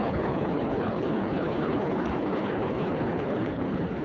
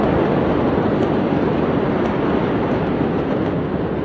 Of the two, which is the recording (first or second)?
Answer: second